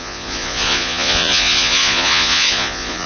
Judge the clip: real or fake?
fake